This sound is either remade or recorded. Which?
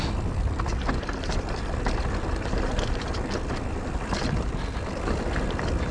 recorded